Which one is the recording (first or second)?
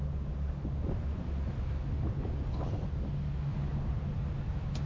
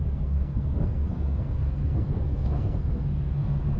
first